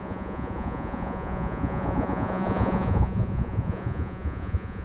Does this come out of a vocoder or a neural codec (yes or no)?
yes